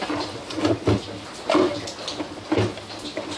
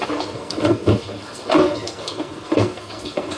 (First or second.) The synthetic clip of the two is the second